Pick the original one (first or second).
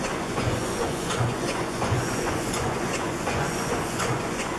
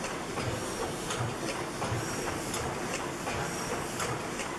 second